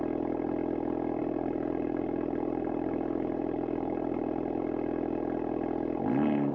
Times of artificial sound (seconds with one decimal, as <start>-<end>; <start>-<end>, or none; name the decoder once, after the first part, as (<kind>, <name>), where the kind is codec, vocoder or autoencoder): 1.2-4.6 (vocoder, BigVGAN v2)